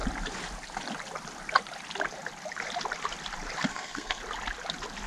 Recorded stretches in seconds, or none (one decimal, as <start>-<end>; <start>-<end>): 0.0-3.7; 4.2-5.1